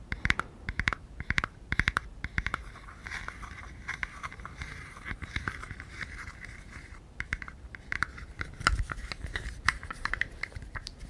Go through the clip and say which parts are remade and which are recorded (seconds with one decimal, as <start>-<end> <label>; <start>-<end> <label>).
0.0-3.0 remade; 3.0-3.5 recorded; 3.5-11.1 remade